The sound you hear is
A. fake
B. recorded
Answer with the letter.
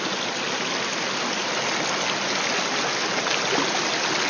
B